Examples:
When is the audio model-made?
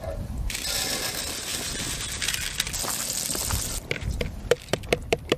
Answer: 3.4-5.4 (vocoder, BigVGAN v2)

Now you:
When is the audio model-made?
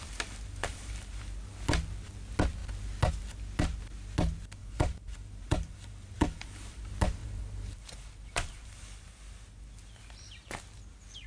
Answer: 0.6-1.2 (vocoder, BigVGAN v2); 4.6-6.8; 7.2-9.0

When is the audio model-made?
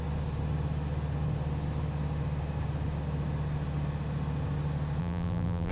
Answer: 5.0-5.7 (vocoder, BigVGAN v2)